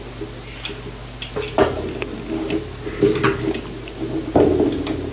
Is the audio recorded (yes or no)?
yes